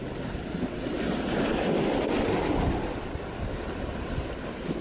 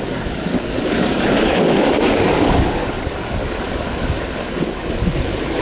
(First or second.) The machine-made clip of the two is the second